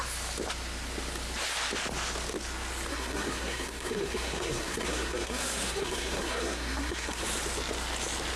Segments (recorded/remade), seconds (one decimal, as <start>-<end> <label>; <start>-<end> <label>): 0.0-2.9 recorded; 2.9-7.2 remade; 7.2-8.4 recorded